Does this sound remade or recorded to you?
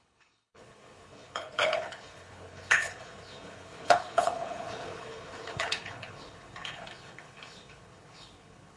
remade